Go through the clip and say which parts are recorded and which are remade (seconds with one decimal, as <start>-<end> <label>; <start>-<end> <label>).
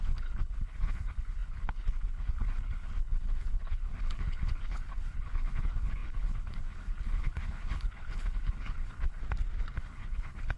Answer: 0.0-9.2 remade; 9.2-9.8 recorded; 9.8-10.6 remade